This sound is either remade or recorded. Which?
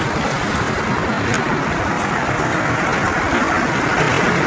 recorded